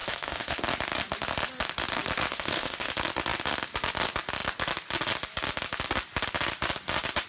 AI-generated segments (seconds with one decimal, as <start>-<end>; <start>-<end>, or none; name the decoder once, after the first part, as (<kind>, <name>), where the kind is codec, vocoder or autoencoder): 0.0-0.6 (autoencoder, DAC-VAE); 2.3-2.9